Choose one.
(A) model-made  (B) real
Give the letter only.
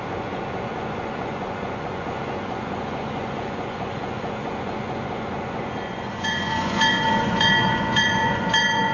A